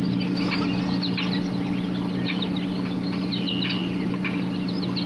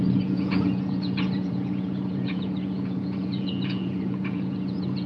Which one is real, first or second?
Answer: first